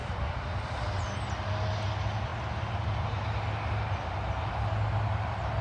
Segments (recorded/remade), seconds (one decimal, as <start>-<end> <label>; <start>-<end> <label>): 0.0-1.2 remade; 1.2-5.6 recorded